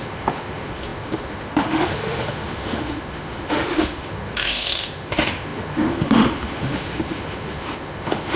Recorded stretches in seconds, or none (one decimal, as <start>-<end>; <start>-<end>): none